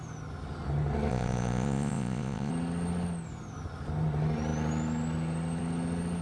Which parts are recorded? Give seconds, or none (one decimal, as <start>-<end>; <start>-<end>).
0.0-1.1; 2.5-6.2

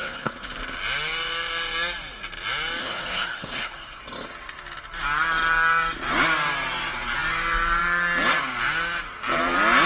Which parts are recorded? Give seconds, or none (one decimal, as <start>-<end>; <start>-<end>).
0.6-2.8; 4.0-9.9

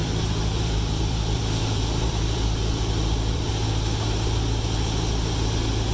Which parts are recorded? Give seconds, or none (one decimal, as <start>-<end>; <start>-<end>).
3.5-5.9

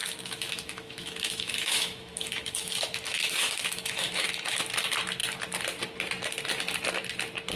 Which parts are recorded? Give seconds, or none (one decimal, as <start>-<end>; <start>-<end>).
4.6-7.6

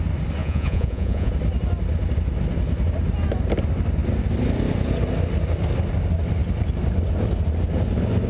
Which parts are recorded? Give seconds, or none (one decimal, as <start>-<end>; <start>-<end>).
0.0-0.4; 1.3-8.3

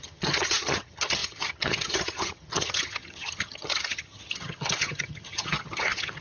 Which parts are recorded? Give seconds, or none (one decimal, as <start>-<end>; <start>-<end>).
none

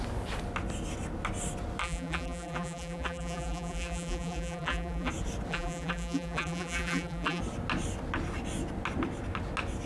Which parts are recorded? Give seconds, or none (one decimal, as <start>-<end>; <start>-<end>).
0.0-1.8; 5.1-5.5; 7.4-9.9